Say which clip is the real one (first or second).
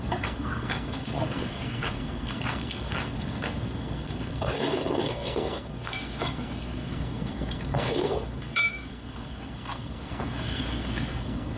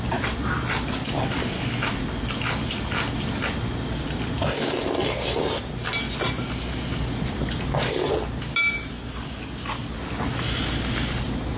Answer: second